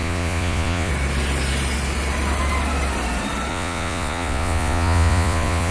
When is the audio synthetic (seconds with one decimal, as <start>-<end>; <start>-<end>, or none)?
0.0-0.9; 3.5-5.7